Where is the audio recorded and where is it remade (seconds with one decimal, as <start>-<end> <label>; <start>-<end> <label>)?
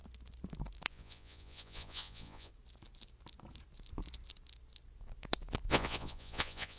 0.0-0.9 recorded; 0.9-2.5 remade; 2.5-5.7 recorded; 5.7-6.8 remade